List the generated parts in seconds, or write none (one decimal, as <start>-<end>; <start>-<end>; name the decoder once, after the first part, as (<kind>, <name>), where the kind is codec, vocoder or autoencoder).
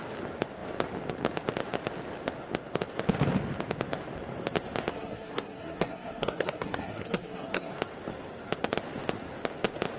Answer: 4.9-7.7 (codec, SNAC)